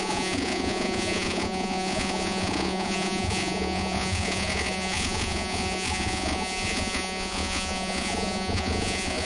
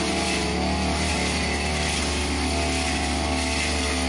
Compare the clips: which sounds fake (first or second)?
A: first